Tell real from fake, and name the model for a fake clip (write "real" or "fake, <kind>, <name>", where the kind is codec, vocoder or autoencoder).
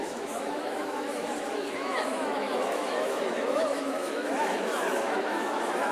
fake, autoencoder, DAC-VAE